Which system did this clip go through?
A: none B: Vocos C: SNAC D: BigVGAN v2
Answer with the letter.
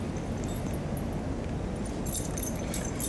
A